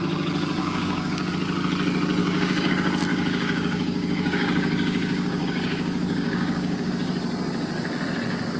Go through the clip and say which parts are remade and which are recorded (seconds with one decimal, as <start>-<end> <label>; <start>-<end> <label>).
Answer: 0.0-0.6 recorded; 0.6-1.3 remade; 1.3-2.2 recorded; 2.2-2.7 remade; 2.7-3.1 recorded; 3.1-6.9 remade; 6.9-8.6 recorded